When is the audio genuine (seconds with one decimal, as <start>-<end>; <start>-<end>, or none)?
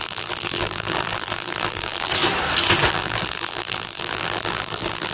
2.1-2.9